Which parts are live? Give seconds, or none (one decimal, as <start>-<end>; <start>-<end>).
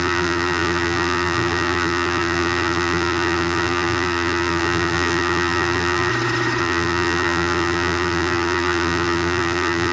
6.1-6.6